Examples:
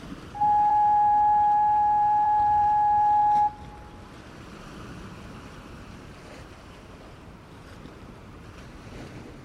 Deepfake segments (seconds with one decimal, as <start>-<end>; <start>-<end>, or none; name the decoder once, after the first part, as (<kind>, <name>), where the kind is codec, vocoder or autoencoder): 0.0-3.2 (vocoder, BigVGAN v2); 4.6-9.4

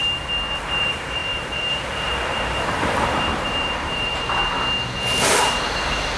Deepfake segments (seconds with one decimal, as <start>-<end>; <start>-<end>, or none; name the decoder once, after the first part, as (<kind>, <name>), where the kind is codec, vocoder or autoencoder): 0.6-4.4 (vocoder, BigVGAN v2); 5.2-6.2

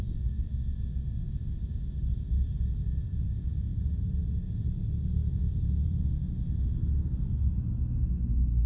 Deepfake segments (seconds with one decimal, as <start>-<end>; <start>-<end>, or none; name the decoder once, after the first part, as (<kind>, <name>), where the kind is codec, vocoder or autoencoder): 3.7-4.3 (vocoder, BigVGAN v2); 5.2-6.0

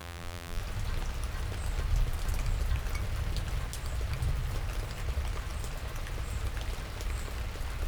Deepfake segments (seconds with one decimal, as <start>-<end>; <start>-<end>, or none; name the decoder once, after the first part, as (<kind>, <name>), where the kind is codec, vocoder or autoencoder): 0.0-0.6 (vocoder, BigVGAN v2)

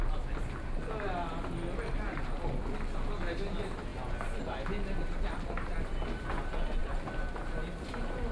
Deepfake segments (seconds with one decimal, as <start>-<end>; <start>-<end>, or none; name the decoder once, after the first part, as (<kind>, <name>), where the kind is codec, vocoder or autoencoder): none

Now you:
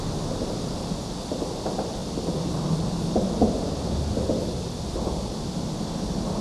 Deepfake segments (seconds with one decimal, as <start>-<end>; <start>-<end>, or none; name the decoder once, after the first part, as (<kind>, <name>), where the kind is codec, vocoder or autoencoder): none

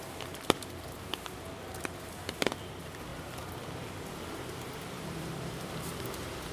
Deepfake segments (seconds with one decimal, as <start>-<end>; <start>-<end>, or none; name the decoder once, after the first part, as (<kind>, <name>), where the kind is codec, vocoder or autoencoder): 0.0-6.5 (vocoder, BigVGAN v2)

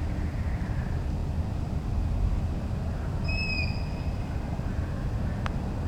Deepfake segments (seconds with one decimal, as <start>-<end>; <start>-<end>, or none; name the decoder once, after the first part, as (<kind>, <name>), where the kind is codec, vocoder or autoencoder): none